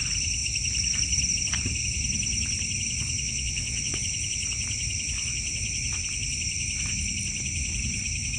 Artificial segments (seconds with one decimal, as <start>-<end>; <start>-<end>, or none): 3.2-4.0